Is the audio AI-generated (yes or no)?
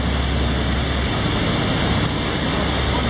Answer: no